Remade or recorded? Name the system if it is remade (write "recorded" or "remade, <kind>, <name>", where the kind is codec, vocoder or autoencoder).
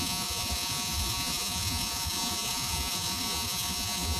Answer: remade, vocoder, Vocos